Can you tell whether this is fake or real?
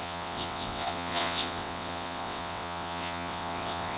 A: fake